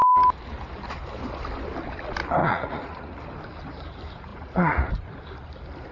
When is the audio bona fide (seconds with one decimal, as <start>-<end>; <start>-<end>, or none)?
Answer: 0.0-2.4; 3.2-4.3; 4.9-5.9

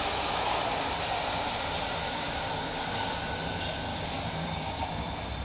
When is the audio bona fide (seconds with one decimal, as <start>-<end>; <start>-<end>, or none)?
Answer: 0.0-2.0; 3.3-3.9; 4.8-5.4